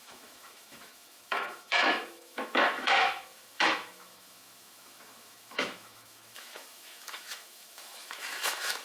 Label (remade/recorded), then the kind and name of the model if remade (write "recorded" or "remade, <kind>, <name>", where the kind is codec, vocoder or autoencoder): remade, autoencoder, DAC-VAE